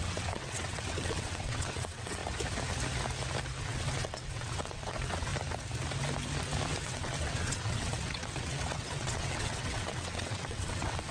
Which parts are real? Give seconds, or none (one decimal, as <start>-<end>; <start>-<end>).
2.2-3.6; 5.3-6.8